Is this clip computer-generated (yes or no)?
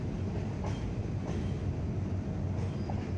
no